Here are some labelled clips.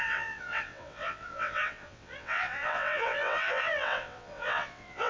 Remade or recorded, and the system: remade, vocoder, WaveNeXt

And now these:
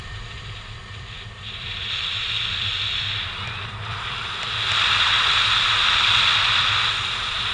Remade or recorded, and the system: remade, vocoder, BigVGAN v2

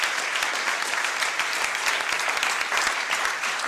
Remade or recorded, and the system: recorded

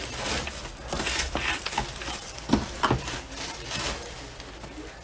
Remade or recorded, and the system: recorded